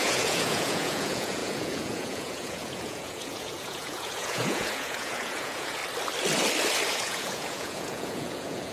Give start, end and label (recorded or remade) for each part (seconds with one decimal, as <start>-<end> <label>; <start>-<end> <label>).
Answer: 0.0-5.8 remade; 5.8-6.9 recorded; 6.9-8.7 remade